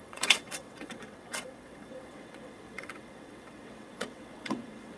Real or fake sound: fake